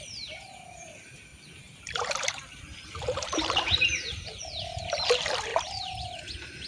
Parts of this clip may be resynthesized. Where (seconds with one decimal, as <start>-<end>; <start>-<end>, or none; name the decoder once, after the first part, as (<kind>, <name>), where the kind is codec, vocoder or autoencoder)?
1.3-4.5 (vocoder, BigVGAN v2); 5.5-6.2